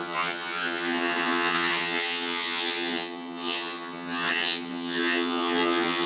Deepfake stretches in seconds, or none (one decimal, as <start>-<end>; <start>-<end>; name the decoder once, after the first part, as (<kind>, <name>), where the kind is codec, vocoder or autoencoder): 0.0-6.1 (vocoder, HiFi-GAN)